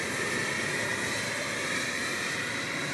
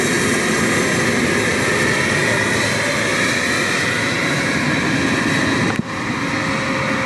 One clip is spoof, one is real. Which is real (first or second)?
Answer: second